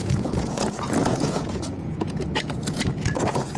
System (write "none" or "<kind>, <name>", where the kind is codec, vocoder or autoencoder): vocoder, Vocos